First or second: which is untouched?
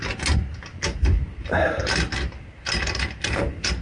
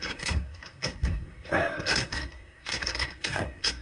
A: first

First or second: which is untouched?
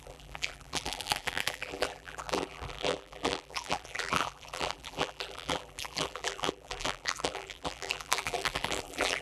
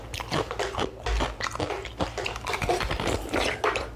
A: second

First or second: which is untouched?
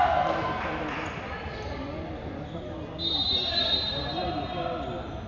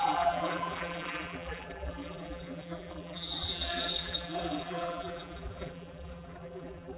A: first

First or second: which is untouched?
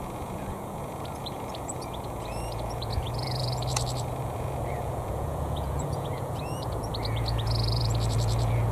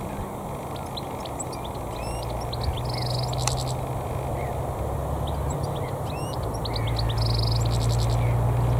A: second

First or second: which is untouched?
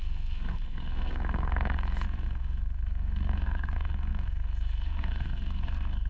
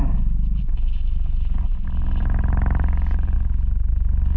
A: second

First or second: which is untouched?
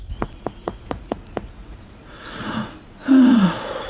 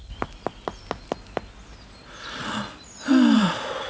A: second